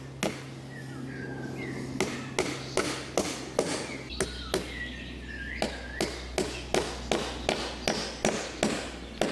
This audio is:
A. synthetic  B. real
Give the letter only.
B